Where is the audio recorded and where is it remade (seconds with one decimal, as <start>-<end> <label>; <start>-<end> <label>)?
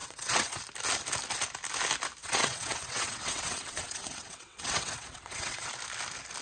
0.0-0.6 remade; 0.6-2.2 recorded; 2.2-5.7 remade; 5.7-6.4 recorded